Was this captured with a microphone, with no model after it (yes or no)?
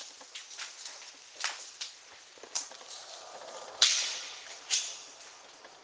yes